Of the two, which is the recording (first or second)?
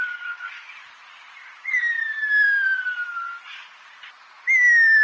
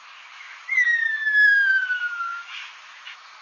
first